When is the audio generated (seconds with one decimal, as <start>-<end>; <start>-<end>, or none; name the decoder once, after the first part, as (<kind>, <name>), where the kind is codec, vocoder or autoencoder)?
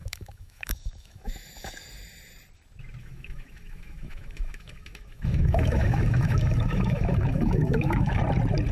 0.0-1.7 (autoencoder, DAC-VAE); 3.0-8.2